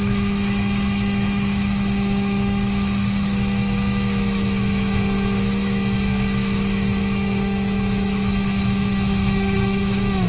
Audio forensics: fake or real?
fake